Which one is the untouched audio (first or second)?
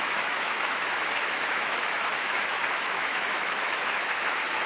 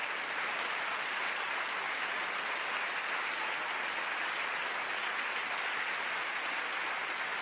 second